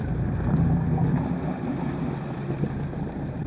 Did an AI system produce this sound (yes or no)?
no